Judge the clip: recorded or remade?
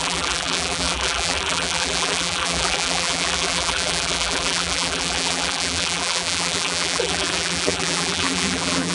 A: remade